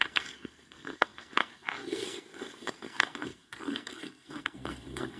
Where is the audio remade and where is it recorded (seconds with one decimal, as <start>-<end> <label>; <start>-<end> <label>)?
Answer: 0.0-5.2 remade